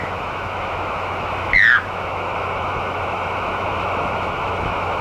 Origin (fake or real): fake